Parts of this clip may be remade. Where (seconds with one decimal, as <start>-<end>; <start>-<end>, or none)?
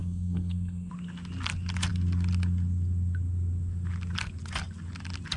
0.0-0.9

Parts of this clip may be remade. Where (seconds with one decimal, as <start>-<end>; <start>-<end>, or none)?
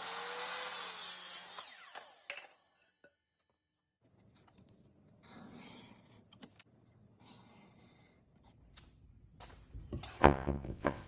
10.2-11.1